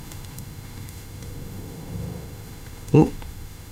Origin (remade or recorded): remade